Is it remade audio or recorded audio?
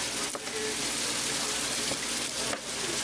recorded